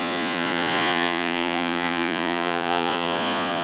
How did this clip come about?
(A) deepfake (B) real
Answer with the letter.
A